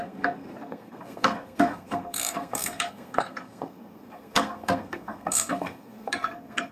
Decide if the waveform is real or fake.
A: fake